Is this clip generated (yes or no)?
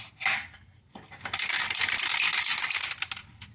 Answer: no